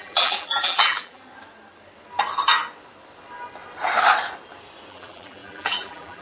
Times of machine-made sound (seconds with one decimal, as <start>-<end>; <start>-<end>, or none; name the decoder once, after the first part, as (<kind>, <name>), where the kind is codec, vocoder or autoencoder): 0.0-1.2 (vocoder, BigVGAN v2); 4.9-6.2